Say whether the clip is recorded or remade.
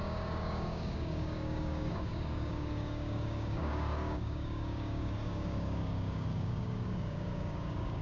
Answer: remade